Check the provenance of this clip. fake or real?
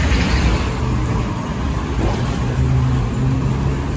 real